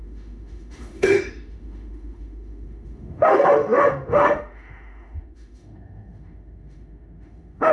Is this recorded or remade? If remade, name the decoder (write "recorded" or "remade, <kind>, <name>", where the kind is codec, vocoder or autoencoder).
remade, autoencoder, DAC-VAE